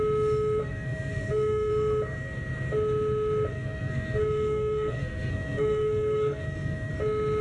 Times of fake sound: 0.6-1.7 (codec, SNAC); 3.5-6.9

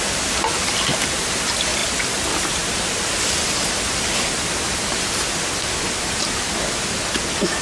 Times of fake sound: none

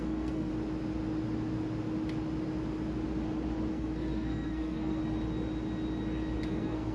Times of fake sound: 0.0-0.5 (codec, SNAC); 3.7-5.0; 6.5-6.9

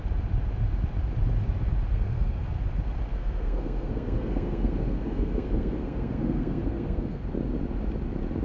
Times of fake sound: 1.9-2.4 (codec, SNAC); 3.1-7.2

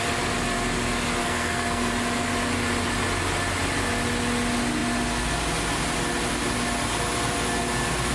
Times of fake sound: 1.2-1.9 (codec, SNAC)

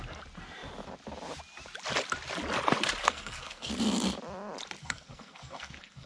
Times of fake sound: 3.0-3.7 (codec, SNAC); 4.8-6.1

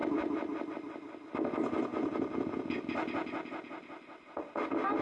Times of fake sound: none